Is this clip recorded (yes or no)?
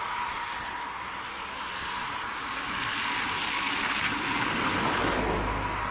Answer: yes